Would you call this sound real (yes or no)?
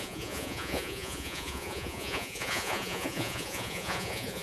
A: no